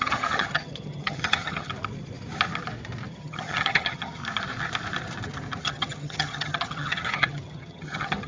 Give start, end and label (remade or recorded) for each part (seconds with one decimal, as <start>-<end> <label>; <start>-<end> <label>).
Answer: 0.0-1.7 remade; 1.7-3.1 recorded; 3.1-4.2 remade; 4.2-5.6 recorded; 5.6-8.3 remade